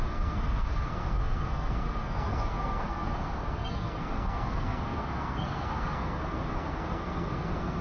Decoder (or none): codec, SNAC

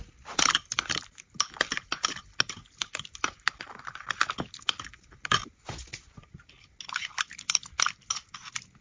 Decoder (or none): none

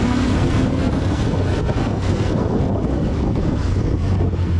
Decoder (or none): codec, SNAC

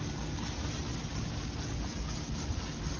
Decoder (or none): none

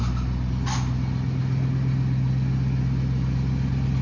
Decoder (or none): none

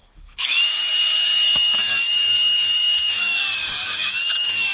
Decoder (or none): codec, DAC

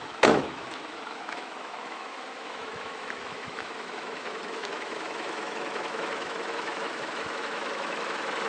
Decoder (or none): autoencoder, DAC-VAE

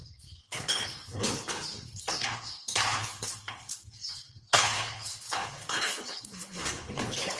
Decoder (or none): codec, HILCodec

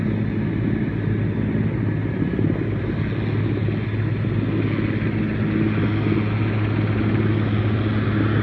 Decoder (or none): none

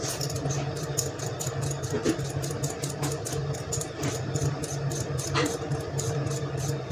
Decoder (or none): none